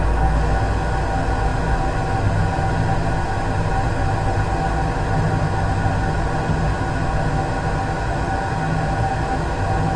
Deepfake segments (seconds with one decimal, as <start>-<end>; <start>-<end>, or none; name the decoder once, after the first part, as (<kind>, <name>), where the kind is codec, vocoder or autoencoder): none